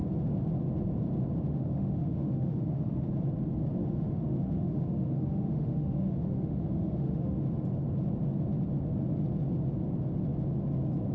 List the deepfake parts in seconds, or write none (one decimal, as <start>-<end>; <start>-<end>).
1.5-3.1; 3.8-7.4